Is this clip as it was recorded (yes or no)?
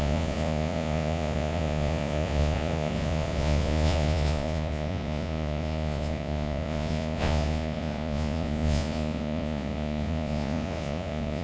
no